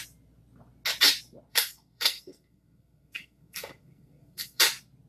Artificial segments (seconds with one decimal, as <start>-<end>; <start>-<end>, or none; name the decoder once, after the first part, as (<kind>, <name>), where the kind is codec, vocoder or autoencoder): 1.5-4.6 (codec, SNAC)